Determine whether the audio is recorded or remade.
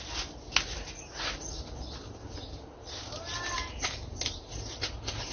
recorded